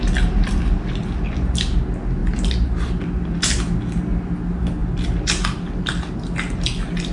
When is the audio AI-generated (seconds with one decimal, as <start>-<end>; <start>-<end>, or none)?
none